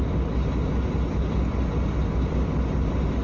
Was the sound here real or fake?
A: real